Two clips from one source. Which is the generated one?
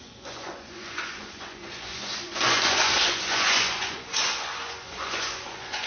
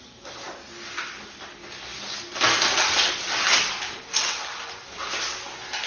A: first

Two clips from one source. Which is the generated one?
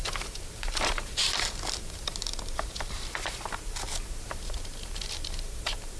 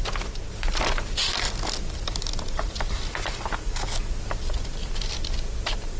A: first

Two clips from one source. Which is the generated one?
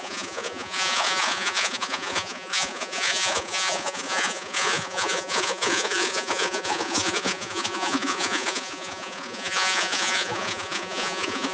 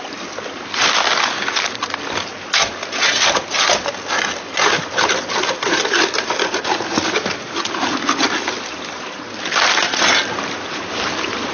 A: first